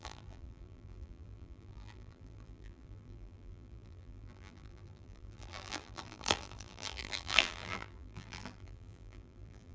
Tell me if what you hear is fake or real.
fake